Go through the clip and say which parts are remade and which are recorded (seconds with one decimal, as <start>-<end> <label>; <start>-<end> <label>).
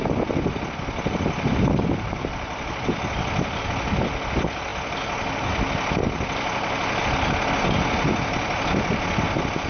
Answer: 0.0-9.7 recorded